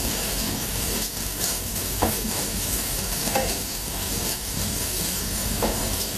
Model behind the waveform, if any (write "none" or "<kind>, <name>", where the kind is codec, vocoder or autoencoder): codec, DAC